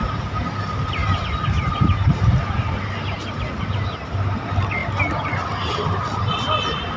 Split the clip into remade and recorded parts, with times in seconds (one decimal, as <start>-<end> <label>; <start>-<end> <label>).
0.0-7.0 recorded